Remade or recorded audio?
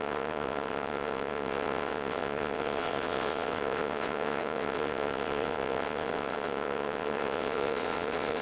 remade